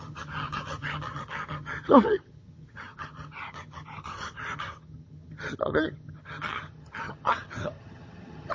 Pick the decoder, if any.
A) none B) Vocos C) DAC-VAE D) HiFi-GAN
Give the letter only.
D